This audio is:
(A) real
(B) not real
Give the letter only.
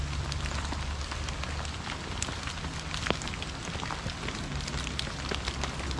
A